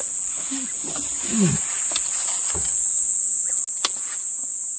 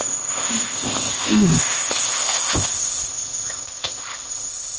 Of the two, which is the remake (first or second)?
second